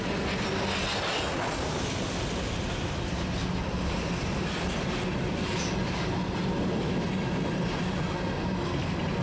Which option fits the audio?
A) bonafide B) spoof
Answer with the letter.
A